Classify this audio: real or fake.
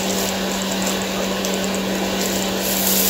real